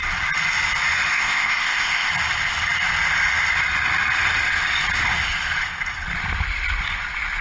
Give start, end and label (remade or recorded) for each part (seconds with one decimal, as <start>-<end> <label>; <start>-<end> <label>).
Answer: 0.0-1.1 recorded; 1.1-2.1 remade; 2.1-7.4 recorded